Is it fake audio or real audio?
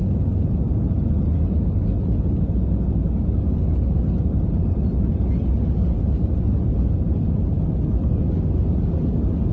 real